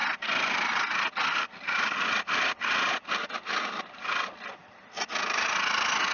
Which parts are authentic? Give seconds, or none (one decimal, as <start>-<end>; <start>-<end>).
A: 0.0-6.1